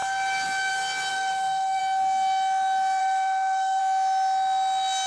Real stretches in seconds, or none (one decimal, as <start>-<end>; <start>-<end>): 0.0-1.1; 1.8-3.0; 3.8-5.1